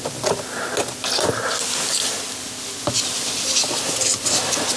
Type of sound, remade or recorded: recorded